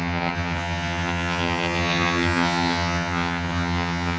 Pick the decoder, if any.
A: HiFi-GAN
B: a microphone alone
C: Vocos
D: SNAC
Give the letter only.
A